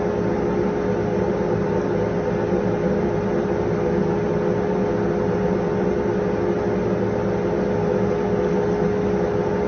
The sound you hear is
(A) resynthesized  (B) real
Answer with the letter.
B